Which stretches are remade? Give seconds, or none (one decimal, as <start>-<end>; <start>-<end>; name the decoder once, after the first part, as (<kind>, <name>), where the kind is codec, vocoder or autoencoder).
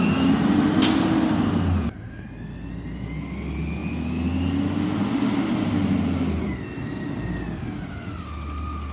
none